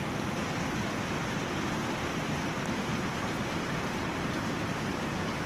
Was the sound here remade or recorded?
recorded